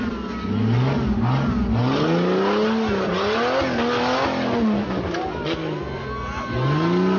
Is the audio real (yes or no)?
yes